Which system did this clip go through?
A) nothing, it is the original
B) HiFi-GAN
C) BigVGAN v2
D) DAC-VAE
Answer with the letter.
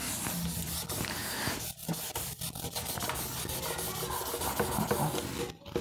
A